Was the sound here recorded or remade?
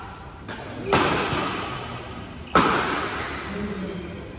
recorded